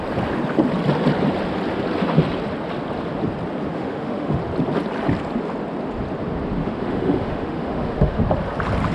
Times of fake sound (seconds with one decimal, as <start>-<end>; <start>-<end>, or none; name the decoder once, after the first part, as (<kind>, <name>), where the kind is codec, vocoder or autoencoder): 3.7-4.4 (autoencoder, DAC-VAE); 6.6-8.2